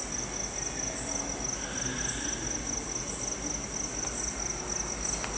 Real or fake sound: real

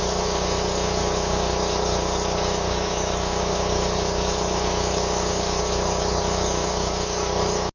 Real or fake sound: fake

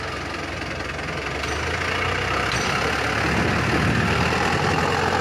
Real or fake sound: real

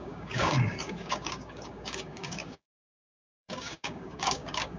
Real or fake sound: fake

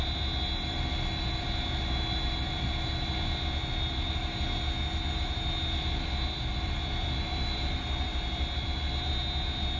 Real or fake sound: real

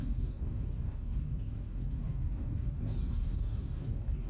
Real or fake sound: fake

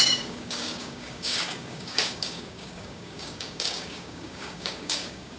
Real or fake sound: fake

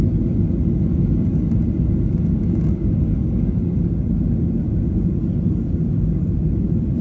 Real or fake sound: real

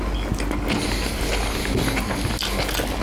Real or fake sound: real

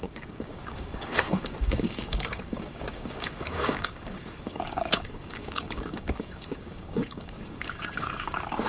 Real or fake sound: fake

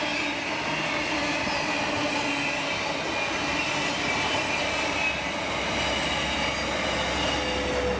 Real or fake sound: real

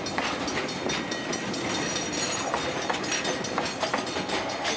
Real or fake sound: real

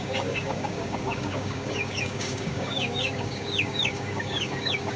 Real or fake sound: fake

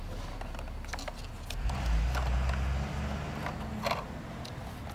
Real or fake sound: real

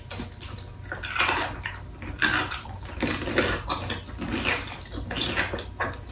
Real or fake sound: real